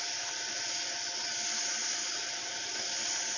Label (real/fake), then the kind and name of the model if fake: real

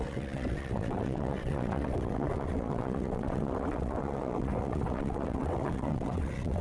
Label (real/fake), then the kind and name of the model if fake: fake, vocoder, WaveNeXt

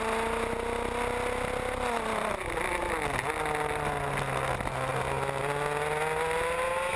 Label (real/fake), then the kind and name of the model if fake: real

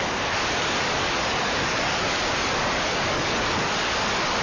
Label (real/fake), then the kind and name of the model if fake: fake, codec, DAC